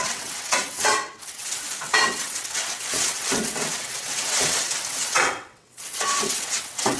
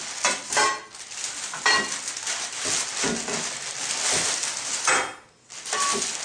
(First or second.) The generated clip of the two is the first